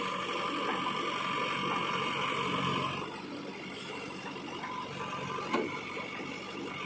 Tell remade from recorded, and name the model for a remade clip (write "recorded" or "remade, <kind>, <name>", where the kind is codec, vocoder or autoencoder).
recorded